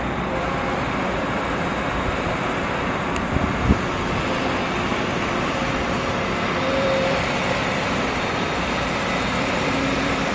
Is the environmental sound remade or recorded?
remade